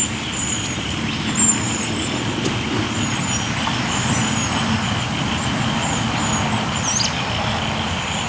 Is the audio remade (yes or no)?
no